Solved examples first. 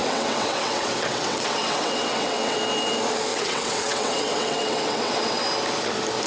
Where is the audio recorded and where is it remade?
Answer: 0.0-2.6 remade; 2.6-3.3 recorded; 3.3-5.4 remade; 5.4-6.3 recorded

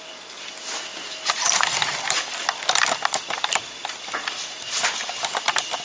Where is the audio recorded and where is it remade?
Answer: 0.0-5.8 recorded

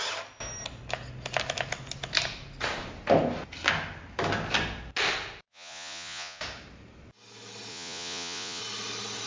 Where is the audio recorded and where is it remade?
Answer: 0.0-5.5 recorded; 5.5-6.4 remade; 6.4-7.7 recorded; 7.7-8.6 remade; 8.6-9.3 recorded

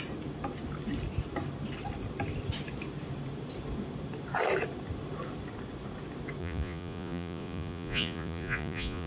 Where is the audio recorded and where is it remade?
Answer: 0.0-6.4 recorded; 6.4-9.1 remade

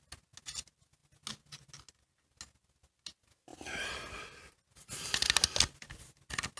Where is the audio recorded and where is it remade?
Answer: 0.0-6.6 recorded

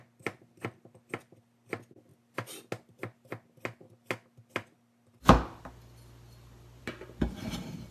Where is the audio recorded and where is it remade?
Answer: 0.0-7.9 recorded

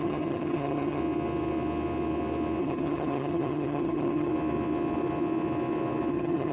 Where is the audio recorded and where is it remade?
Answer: 0.0-1.0 remade; 1.0-2.6 recorded; 2.6-4.3 remade; 4.3-6.1 recorded; 6.1-6.5 remade